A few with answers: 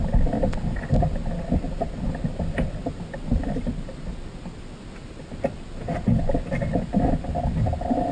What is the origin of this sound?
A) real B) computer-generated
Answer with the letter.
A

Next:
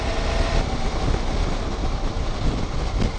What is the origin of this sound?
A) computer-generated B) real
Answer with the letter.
B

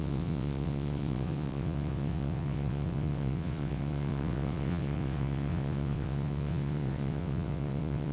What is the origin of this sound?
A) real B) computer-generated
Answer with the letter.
B